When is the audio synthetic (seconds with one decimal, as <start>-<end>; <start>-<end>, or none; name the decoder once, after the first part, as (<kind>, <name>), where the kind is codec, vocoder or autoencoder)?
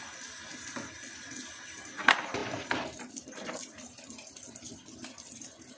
none